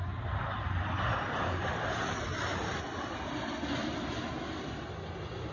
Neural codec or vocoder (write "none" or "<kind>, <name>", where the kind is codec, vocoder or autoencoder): none